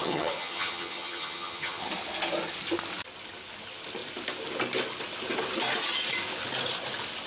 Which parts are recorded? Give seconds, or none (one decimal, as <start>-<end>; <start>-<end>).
1.9-7.3